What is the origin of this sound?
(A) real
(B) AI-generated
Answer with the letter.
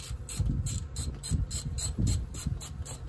B